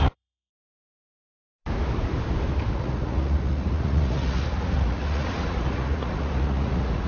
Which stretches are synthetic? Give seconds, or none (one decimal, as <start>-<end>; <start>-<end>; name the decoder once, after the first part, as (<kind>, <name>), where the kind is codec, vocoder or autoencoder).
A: 0.0-0.5 (vocoder, Vocos); 2.7-7.1